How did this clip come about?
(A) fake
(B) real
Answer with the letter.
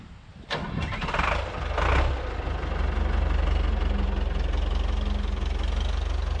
B